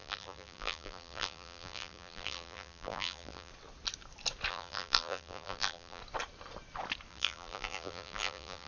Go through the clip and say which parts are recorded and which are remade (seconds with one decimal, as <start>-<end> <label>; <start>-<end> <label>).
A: 0.0-3.5 remade; 3.5-4.5 recorded; 4.5-6.0 remade; 6.0-7.1 recorded; 7.1-8.7 remade